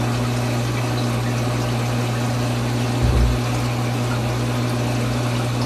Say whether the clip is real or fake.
real